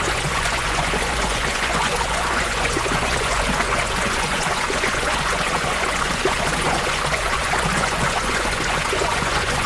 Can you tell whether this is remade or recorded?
remade